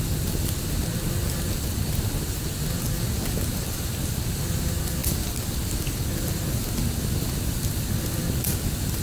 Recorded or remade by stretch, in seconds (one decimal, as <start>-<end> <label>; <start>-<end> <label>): 0.0-9.0 recorded

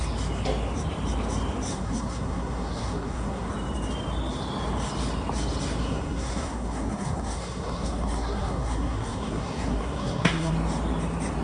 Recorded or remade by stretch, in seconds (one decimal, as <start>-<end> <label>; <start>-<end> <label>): 0.0-1.7 recorded; 1.7-3.5 remade; 3.5-5.8 recorded; 5.8-10.5 remade; 10.5-11.4 recorded

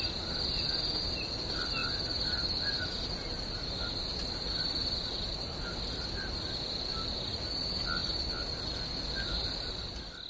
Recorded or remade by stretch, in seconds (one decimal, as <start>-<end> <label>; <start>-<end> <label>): 0.0-10.3 recorded

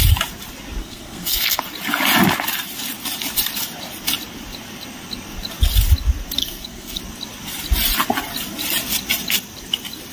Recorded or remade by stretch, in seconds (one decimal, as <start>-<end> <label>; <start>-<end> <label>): 0.0-0.8 recorded; 0.8-1.6 remade; 1.6-6.4 recorded; 6.4-7.0 remade; 7.0-10.1 recorded